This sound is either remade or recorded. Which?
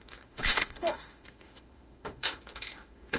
remade